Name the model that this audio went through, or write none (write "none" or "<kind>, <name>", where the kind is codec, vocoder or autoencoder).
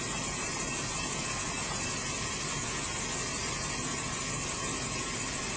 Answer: none